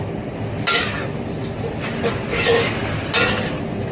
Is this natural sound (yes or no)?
yes